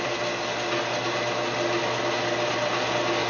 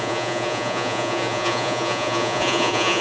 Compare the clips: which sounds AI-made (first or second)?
second